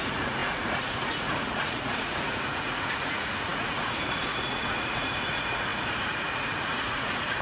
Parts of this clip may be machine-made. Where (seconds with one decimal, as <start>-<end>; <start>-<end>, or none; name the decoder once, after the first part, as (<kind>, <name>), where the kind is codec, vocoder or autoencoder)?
0.0-7.4 (vocoder, Vocos)